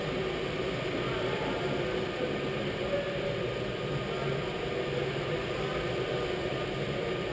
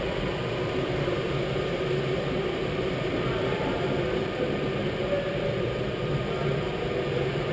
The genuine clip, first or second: first